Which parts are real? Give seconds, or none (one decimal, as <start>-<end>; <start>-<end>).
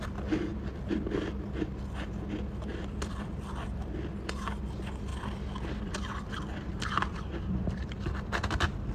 0.0-0.5; 1.0-2.7; 3.8-5.1